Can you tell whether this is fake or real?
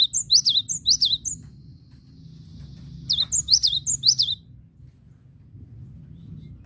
real